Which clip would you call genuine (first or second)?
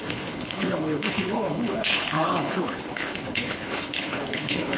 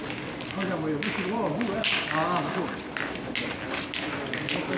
second